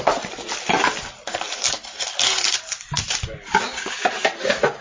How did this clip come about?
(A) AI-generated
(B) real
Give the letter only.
B